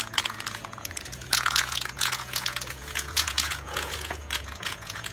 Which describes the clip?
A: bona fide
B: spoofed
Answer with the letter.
B